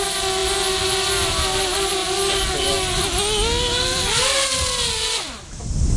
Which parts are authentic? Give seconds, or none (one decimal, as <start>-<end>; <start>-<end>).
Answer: 0.0-6.0